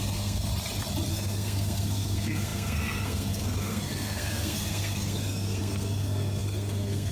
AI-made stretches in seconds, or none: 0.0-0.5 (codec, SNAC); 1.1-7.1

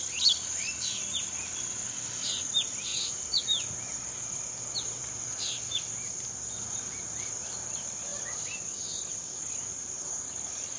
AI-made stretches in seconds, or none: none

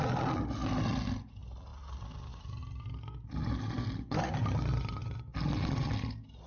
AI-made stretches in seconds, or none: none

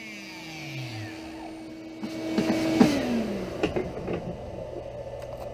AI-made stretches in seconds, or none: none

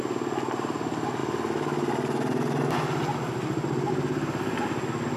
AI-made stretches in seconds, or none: none